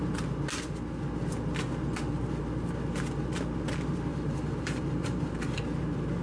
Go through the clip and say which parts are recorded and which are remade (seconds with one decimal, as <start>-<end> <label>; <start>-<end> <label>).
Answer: 0.0-4.1 recorded; 4.1-5.6 remade; 5.6-6.2 recorded